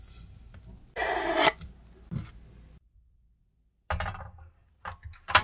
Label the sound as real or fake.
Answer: real